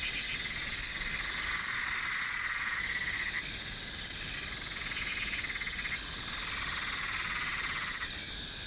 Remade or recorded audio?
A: recorded